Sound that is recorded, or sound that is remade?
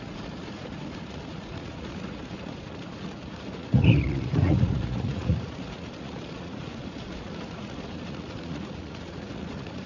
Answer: remade